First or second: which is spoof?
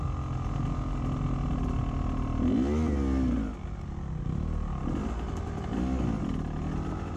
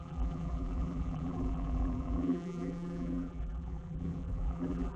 second